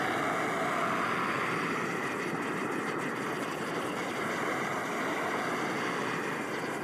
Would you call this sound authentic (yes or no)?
yes